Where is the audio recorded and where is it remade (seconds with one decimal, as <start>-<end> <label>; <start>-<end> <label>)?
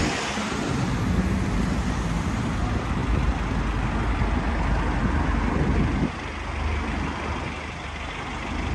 0.0-8.7 recorded